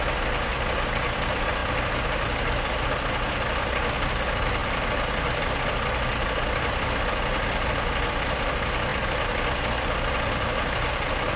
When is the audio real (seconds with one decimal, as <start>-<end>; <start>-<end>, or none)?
0.0-11.4